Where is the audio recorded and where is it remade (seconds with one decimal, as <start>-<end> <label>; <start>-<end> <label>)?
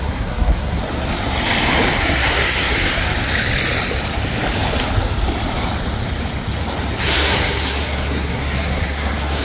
0.0-0.8 remade; 0.8-2.0 recorded; 2.0-2.9 remade; 2.9-7.0 recorded; 7.0-9.4 remade